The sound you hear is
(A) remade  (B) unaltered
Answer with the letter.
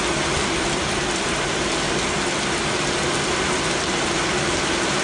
B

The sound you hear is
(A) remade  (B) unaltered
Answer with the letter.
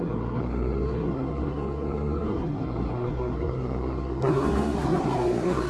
A